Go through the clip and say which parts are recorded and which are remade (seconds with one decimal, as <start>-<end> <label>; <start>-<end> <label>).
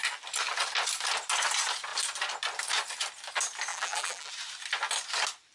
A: 0.0-3.7 recorded; 3.7-4.3 remade; 4.3-5.5 recorded